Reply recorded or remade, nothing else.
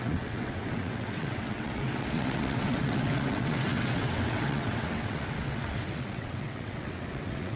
remade